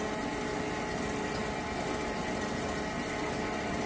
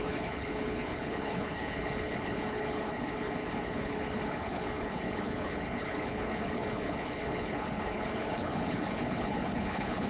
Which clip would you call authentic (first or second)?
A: first